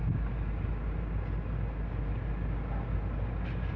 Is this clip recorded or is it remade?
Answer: recorded